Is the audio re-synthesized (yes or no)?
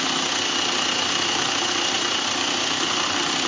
no